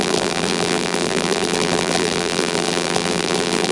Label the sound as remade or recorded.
remade